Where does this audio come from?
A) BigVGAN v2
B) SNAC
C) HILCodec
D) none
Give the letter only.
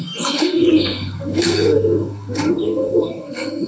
B